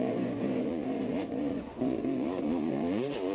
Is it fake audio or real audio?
fake